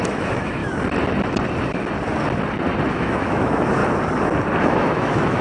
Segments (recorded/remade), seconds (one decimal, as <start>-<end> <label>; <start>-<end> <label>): 0.0-0.6 remade; 0.6-2.9 recorded; 2.9-3.8 remade; 3.8-4.6 recorded; 4.6-5.4 remade